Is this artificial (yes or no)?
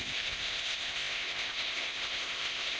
yes